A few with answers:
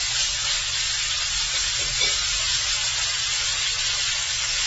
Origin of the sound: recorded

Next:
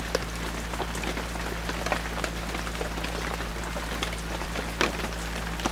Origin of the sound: recorded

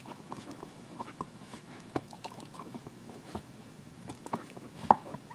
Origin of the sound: remade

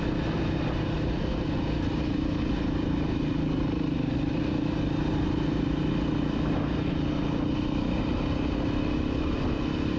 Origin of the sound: recorded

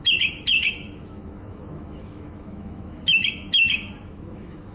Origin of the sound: remade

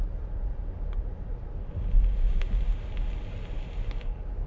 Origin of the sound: recorded